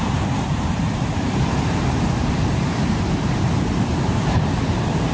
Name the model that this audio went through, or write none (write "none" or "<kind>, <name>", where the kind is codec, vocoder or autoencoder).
vocoder, BigVGAN v2